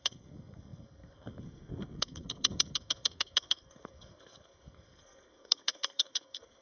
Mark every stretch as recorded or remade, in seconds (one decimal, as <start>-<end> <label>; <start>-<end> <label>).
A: 0.0-6.6 remade